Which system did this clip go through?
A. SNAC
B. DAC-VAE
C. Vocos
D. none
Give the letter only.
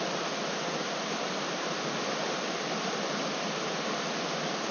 D